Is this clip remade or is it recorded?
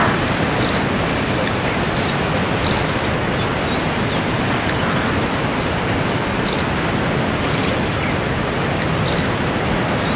recorded